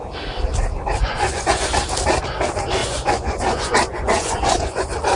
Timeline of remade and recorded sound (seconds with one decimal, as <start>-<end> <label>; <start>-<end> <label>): 0.0-1.0 recorded; 1.0-1.7 remade; 1.7-2.8 recorded; 2.8-4.8 remade; 4.8-5.2 recorded